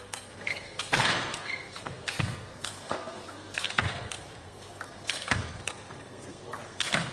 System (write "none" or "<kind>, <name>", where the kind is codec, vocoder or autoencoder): codec, SNAC